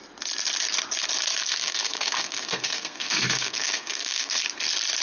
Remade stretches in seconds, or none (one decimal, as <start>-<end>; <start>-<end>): 1.5-4.4